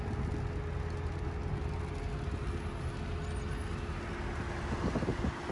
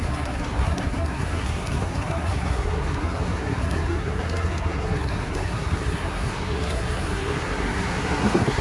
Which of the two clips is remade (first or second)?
second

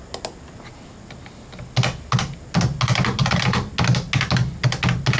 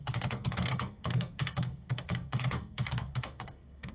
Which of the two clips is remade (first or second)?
second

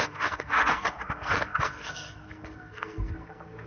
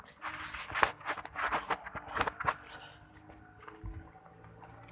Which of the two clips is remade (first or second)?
first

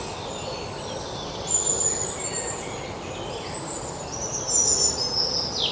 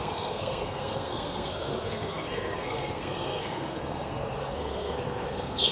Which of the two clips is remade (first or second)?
second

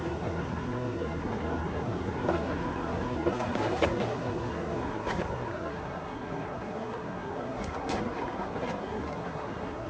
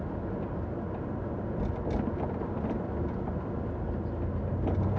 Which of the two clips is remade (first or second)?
first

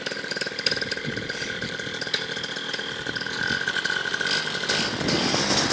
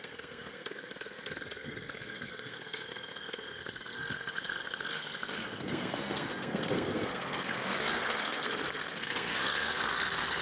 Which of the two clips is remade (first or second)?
second